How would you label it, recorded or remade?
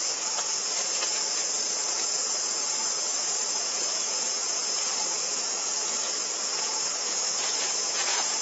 remade